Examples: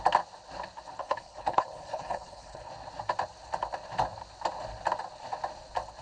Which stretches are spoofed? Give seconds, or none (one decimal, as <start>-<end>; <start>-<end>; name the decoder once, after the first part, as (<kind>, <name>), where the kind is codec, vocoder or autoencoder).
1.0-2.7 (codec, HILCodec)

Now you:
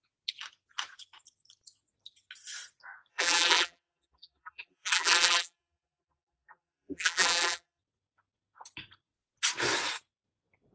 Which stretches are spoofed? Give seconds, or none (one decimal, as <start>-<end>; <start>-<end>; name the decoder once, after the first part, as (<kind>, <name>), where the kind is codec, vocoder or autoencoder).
3.1-7.8 (vocoder, BigVGAN v2)

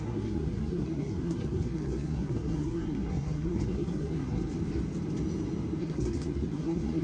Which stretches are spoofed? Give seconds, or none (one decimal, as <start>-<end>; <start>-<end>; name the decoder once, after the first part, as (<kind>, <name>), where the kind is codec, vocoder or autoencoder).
0.0-4.4 (codec, SNAC); 5.8-7.0

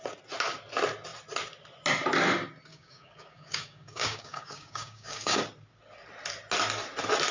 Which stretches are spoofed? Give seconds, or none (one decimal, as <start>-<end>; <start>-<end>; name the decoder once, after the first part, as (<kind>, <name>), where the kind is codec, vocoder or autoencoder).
2.7-5.4 (codec, DAC)